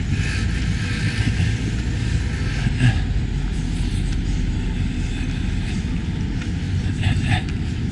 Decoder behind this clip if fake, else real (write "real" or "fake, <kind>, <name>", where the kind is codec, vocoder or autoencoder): real